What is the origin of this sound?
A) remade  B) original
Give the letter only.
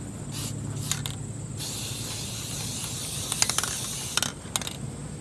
B